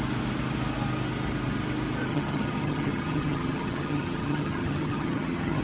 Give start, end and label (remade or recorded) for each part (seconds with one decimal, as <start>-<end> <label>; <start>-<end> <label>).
0.0-2.1 recorded; 2.1-5.6 remade